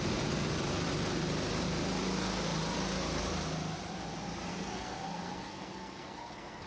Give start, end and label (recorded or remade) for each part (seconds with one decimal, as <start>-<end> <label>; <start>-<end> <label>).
0.0-4.5 recorded; 4.5-6.7 remade